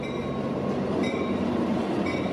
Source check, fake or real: real